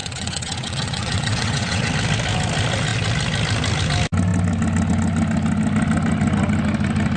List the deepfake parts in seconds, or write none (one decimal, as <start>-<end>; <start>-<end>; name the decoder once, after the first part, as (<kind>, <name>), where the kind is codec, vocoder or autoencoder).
0.0-1.9 (vocoder, WaveNeXt)